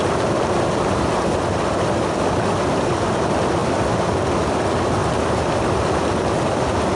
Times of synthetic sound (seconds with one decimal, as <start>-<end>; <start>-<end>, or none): none